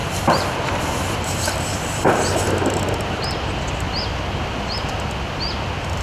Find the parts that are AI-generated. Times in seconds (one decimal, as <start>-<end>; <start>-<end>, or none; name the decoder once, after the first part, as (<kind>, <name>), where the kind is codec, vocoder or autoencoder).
0.0-3.6 (vocoder, BigVGAN v2)